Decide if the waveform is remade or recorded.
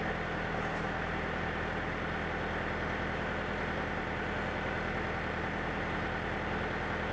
recorded